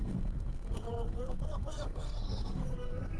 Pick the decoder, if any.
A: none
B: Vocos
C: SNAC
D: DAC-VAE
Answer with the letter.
C